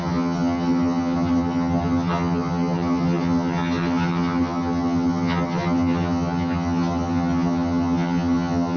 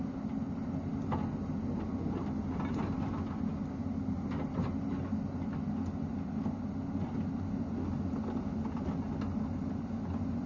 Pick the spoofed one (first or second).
first